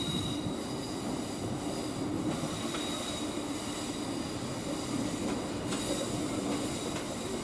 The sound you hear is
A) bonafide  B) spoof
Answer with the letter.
A